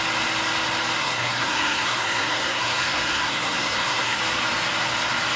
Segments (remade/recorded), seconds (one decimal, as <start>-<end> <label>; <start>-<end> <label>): 0.0-1.0 recorded; 1.0-4.2 remade; 4.2-5.4 recorded